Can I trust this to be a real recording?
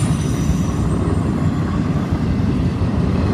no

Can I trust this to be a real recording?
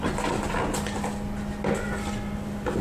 yes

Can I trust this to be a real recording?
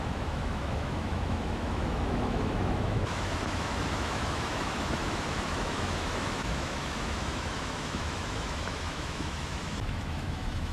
no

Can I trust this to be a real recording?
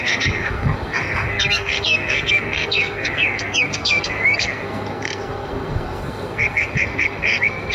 no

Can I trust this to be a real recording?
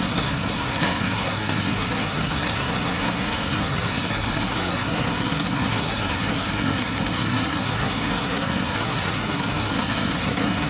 no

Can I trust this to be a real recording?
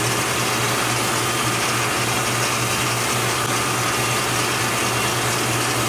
yes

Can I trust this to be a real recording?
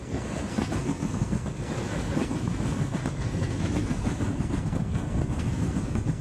no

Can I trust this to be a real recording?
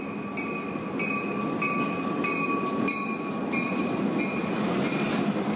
yes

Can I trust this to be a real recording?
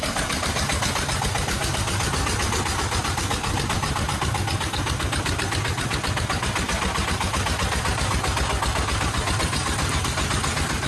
yes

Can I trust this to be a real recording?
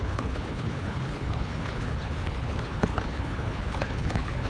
no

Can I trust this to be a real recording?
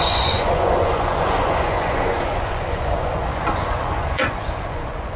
no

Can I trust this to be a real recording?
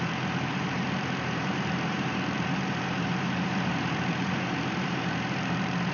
no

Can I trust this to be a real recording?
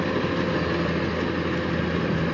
yes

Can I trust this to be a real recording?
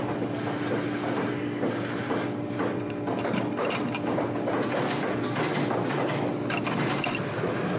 yes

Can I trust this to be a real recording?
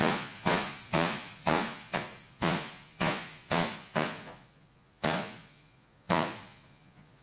no